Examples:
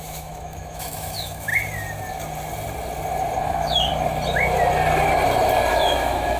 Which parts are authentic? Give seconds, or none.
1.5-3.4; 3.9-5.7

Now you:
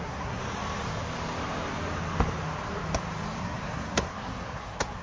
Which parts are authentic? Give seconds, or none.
0.4-3.4

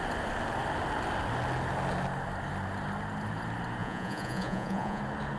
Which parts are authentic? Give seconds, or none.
0.0-3.8; 5.0-5.4

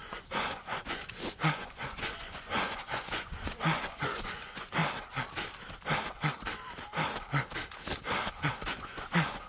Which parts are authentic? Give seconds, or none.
4.8-8.3